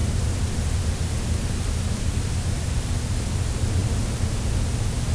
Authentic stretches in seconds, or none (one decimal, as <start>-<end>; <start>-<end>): 0.0-5.1